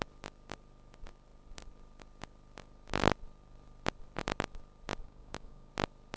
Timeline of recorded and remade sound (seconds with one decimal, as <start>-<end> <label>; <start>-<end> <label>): 0.0-5.0 recorded; 5.0-5.7 remade; 5.7-6.2 recorded